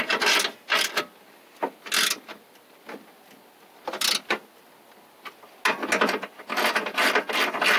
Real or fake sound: real